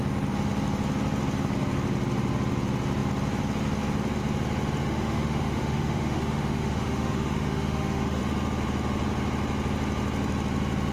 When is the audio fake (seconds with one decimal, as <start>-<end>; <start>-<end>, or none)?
4.8-8.2